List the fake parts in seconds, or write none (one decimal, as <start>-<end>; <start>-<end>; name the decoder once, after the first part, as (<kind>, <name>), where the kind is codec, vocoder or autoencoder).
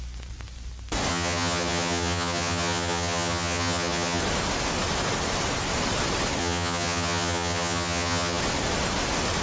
1.1-4.2 (vocoder, HiFi-GAN); 6.4-8.4